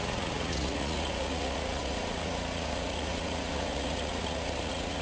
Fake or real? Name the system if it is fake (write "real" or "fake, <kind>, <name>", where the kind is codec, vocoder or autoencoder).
fake, vocoder, Vocos